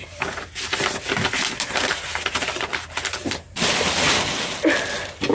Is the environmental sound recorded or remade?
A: recorded